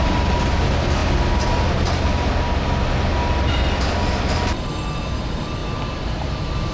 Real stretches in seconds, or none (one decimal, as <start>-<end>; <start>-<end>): 0.0-5.6